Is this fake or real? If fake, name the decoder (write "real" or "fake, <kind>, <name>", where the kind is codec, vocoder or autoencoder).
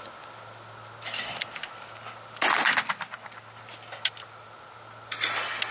real